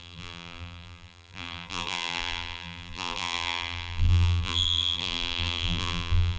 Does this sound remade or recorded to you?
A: remade